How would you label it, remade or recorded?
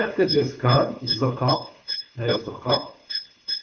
remade